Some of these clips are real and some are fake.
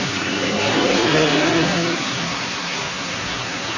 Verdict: fake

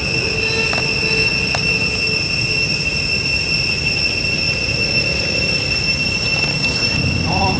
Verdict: real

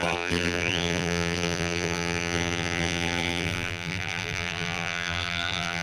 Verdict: fake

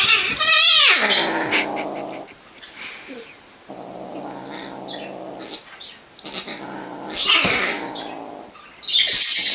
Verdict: real